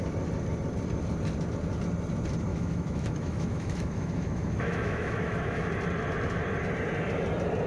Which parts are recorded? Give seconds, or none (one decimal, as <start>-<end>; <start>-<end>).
0.0-2.5; 5.7-7.7